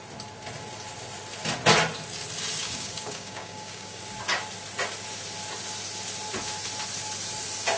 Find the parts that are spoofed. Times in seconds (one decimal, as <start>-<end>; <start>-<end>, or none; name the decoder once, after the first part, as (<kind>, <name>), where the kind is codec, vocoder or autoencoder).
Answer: 2.6-4.0 (codec, DAC)